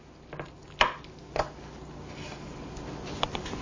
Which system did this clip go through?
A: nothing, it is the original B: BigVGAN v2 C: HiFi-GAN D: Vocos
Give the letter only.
A